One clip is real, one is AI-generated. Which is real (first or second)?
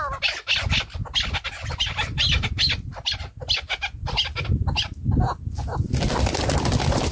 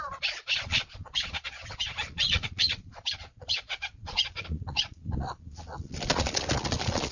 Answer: first